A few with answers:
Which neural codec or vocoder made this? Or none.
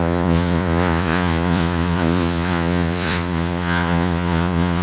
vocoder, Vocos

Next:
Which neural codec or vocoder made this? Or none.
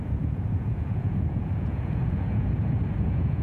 vocoder, Vocos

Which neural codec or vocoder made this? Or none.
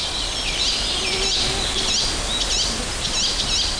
none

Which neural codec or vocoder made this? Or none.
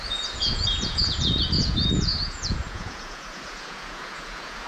vocoder, Vocos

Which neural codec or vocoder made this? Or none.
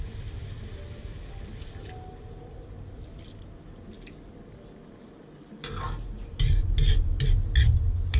none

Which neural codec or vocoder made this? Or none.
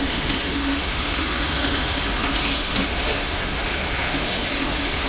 autoencoder, DAC-VAE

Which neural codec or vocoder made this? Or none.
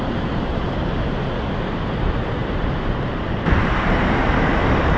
vocoder, BigVGAN v2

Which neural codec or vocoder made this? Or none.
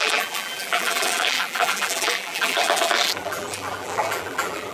vocoder, BigVGAN v2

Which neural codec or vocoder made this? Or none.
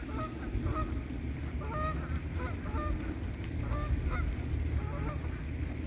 none